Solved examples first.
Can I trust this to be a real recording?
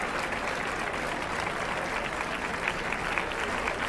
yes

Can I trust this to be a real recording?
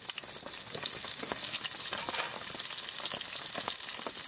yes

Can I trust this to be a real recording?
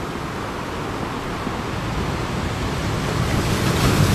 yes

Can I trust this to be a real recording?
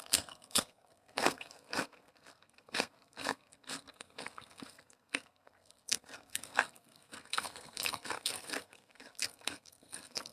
no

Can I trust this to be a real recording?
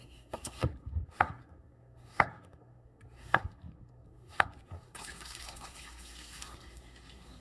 no